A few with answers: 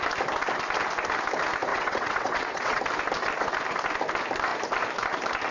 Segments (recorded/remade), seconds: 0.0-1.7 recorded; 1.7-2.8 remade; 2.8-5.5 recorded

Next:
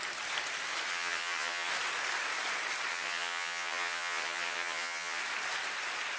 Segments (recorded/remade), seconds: 0.0-0.9 recorded; 0.9-1.7 remade; 1.7-2.9 recorded; 2.9-5.2 remade; 5.2-6.2 recorded

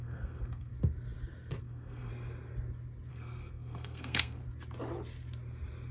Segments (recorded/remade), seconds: 0.0-0.7 remade; 0.7-1.6 recorded; 1.6-2.1 remade; 2.1-3.1 recorded; 3.1-4.4 remade; 4.4-5.9 recorded

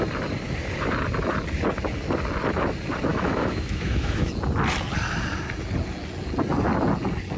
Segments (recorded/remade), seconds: 0.0-3.1 recorded; 3.1-4.3 remade; 4.3-7.4 recorded

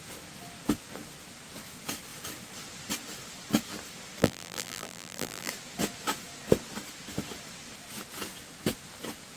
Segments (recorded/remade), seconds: 0.0-4.2 recorded; 4.2-5.5 remade; 5.5-9.4 recorded